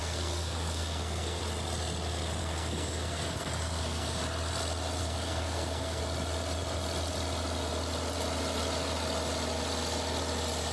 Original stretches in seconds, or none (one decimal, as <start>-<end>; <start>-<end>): 1.4-2.4; 4.2-5.0; 6.0-10.7